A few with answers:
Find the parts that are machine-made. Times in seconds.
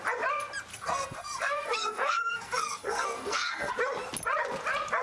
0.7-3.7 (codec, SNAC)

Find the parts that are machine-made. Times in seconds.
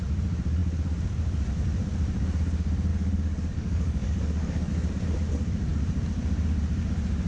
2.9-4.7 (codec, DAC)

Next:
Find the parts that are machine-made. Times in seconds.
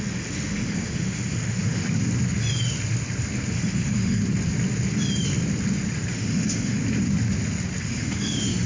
0.0-1.8 (autoencoder, DAC-VAE); 3.5-4.2; 6.1-6.8; 7.8-8.7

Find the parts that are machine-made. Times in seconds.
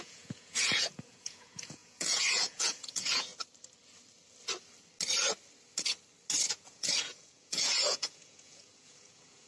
0.0-3.3 (vocoder, Vocos); 6.5-9.5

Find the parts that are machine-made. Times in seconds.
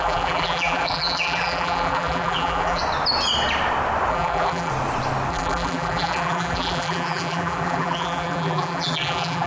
0.0-2.8 (vocoder, BigVGAN v2); 4.1-4.7; 5.3-9.5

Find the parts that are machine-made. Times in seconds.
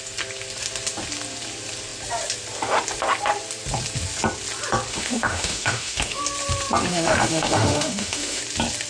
4.9-6.2 (autoencoder, DAC-VAE); 6.9-8.4